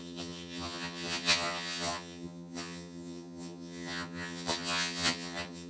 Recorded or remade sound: remade